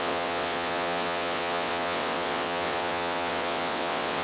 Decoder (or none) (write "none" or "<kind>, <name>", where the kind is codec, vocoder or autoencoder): vocoder, WaveNeXt